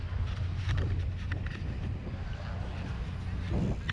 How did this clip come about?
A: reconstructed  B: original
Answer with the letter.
B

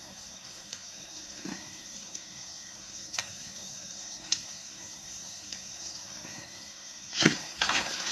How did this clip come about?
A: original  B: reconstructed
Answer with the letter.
B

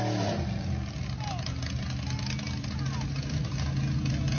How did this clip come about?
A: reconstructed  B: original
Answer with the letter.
B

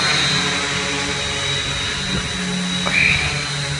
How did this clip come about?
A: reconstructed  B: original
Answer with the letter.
B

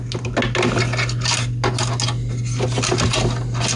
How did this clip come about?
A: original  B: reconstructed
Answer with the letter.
A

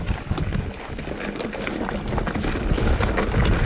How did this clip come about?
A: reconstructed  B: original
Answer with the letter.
B